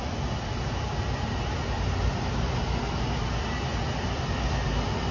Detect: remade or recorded recorded